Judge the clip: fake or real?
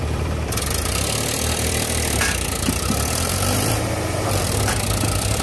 fake